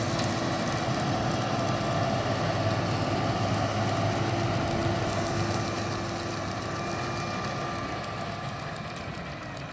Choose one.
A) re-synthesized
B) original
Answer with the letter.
B